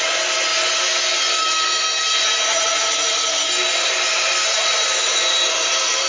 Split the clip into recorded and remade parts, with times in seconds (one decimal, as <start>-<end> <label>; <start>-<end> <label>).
0.0-6.1 recorded